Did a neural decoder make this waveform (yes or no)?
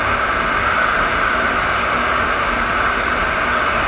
no